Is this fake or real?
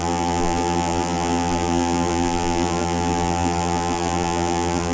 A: fake